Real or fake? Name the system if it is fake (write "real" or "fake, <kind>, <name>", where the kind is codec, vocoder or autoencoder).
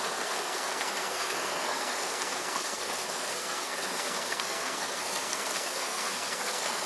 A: fake, codec, SNAC